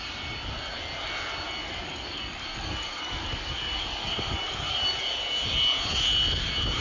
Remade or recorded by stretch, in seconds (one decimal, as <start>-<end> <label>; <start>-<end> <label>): 0.0-1.6 recorded; 1.6-5.0 remade; 5.0-6.8 recorded